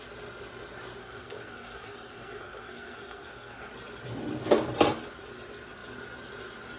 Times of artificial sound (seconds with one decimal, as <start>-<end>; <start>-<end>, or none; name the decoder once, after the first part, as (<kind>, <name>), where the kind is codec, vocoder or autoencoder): 1.0-3.7 (codec, SNAC)